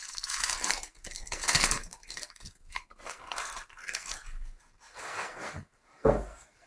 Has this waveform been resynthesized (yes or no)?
yes